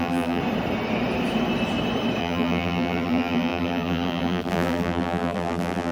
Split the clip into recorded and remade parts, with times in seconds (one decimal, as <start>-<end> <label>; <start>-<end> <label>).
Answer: 0.0-0.4 remade; 0.4-2.2 recorded; 2.2-5.9 remade